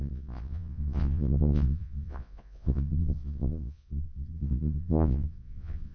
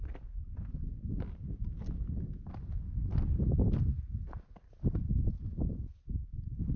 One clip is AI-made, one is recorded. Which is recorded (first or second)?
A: second